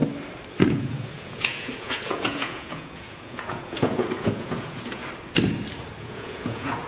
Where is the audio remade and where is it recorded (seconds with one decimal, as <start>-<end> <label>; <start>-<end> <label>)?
0.0-0.6 recorded; 0.6-5.0 remade; 5.0-6.0 recorded; 6.0-6.9 remade

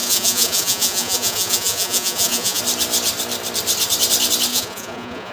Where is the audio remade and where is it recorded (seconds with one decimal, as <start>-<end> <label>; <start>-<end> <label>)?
0.0-2.6 remade; 2.6-4.5 recorded; 4.5-5.3 remade

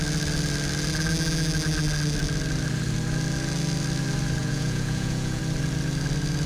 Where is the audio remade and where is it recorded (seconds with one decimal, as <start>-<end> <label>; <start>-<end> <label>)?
0.0-4.4 recorded; 4.4-5.4 remade; 5.4-6.5 recorded

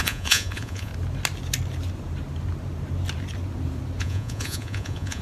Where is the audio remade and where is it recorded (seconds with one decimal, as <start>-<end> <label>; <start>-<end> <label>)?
0.0-0.9 remade; 0.9-4.0 recorded; 4.0-5.2 remade

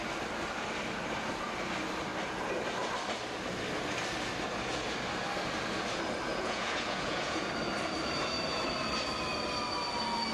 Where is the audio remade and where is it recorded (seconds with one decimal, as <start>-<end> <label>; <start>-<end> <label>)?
0.0-6.3 recorded; 6.3-7.5 remade; 7.5-10.3 recorded

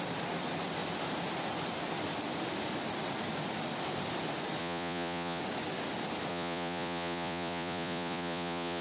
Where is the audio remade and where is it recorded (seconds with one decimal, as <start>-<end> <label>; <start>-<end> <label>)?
0.0-4.6 recorded; 4.6-5.4 remade; 5.4-6.3 recorded; 6.3-8.8 remade

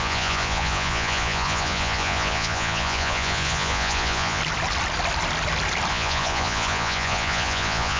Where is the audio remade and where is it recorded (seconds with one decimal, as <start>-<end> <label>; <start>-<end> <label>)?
0.0-4.4 remade; 4.4-5.9 recorded; 5.9-8.0 remade